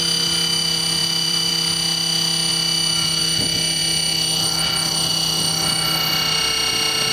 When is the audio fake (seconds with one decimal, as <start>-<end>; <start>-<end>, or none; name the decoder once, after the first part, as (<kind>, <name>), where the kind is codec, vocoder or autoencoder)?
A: 1.0-1.5 (vocoder, BigVGAN v2)